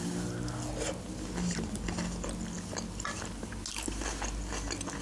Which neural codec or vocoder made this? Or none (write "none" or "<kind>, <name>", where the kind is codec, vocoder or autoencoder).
none